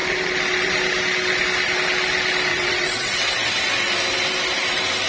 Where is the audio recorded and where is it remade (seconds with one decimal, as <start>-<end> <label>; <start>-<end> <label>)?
0.0-2.5 recorded; 2.5-3.5 remade; 3.5-5.1 recorded